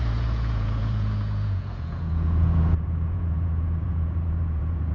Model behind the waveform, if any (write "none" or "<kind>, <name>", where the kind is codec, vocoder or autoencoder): vocoder, Vocos